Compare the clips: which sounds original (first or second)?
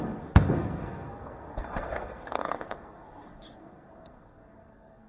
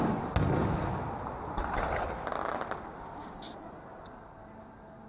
second